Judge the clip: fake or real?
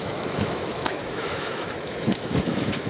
fake